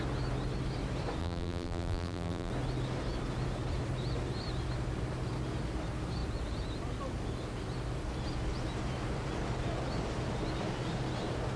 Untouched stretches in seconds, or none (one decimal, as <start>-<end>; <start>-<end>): 0.0-1.2; 2.5-11.6